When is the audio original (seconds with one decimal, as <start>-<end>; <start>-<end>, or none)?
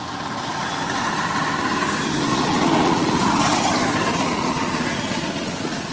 0.0-2.3; 3.3-4.1